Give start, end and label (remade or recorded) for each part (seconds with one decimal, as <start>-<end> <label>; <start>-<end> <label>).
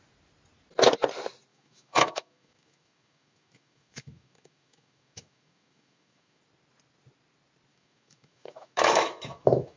0.0-1.5 recorded; 1.5-6.4 remade; 6.4-7.7 recorded; 7.7-9.8 remade